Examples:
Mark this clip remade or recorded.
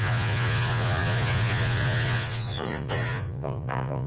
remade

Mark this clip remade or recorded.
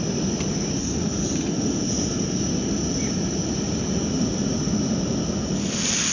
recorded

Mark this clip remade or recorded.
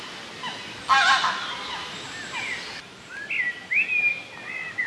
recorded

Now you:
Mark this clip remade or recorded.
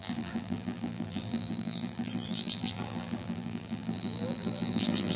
remade